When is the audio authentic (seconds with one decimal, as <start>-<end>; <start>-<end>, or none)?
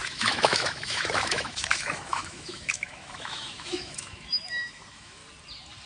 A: 5.2-5.9